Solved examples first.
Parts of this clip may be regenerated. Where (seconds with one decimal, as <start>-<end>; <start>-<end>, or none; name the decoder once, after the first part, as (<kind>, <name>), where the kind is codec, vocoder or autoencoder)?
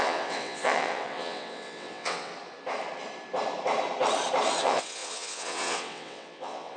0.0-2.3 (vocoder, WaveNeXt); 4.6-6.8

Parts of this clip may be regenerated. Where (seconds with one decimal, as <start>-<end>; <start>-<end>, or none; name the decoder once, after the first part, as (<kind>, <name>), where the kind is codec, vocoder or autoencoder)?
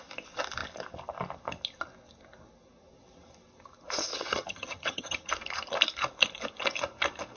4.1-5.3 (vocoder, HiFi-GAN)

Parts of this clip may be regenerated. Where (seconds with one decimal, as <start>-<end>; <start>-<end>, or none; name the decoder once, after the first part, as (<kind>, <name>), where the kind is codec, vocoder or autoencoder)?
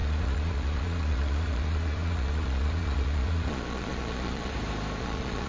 0.0-4.5 (vocoder, Vocos); 5.0-5.5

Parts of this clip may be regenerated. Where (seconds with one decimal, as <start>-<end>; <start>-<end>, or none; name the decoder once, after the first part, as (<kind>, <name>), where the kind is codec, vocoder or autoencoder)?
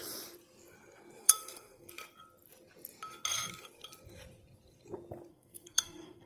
1.2-1.9 (codec, SNAC); 5.3-6.3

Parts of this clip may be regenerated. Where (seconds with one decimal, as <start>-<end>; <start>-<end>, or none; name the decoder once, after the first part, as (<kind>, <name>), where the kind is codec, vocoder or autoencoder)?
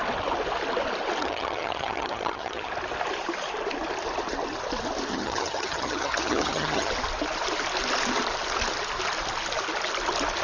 1.2-2.7 (vocoder, HiFi-GAN); 5.1-6.9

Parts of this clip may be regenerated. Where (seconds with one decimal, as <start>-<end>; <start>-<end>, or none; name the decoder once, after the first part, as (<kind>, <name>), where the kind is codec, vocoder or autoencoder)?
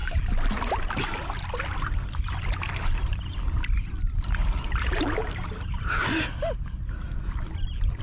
4.4-6.2 (vocoder, BigVGAN v2)